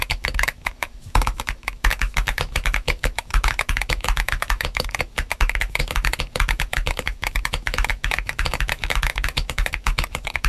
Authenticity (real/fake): fake